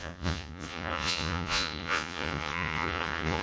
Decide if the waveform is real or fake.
fake